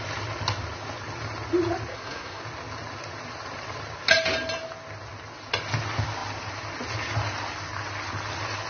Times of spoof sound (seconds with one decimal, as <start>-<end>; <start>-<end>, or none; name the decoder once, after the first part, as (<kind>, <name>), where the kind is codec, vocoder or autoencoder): 1.9-2.4 (codec, SNAC)